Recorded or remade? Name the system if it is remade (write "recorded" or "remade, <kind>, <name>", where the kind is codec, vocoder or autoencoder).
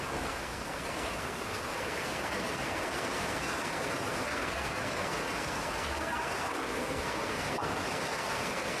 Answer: remade, codec, SNAC